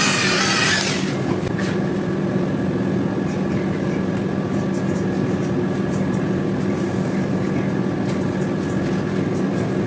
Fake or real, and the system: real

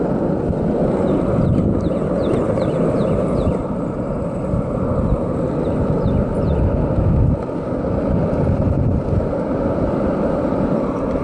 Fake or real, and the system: real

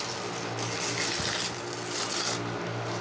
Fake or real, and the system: real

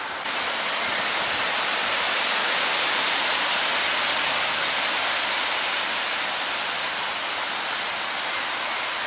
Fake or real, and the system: real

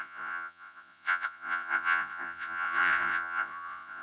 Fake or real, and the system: fake, vocoder, Vocos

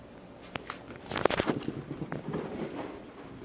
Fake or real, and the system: real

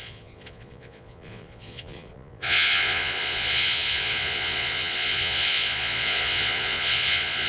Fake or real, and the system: fake, vocoder, Vocos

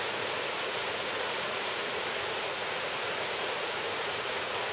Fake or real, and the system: fake, vocoder, Vocos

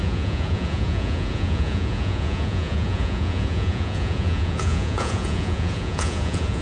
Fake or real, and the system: fake, vocoder, Vocos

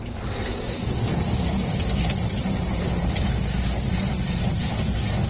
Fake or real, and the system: real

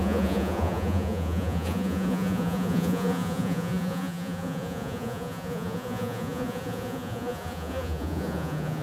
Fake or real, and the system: fake, vocoder, Vocos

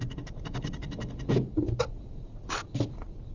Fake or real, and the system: real